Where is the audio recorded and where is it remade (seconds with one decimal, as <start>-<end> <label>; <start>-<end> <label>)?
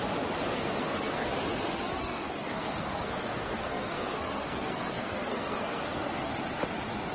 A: 0.0-0.5 recorded; 0.5-1.3 remade; 1.3-2.0 recorded; 2.0-6.3 remade; 6.3-7.1 recorded